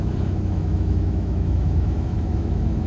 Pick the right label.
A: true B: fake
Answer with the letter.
B